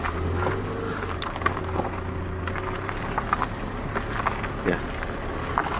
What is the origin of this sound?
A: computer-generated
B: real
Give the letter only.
B